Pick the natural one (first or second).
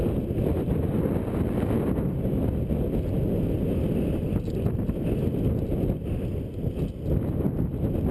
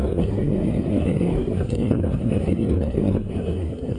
first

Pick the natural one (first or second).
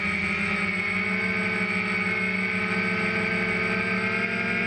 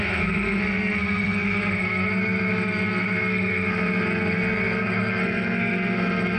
first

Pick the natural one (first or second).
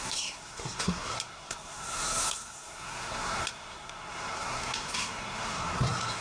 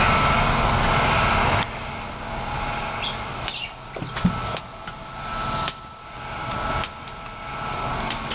second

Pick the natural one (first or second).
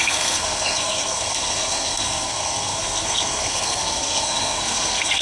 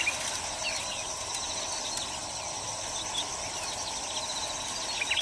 second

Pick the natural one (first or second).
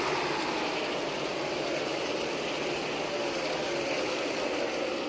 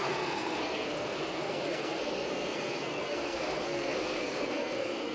first